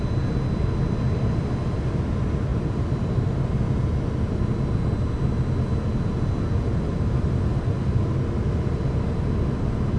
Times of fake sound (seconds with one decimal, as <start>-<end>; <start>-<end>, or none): none